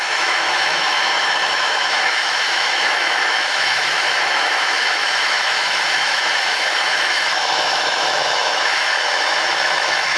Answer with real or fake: fake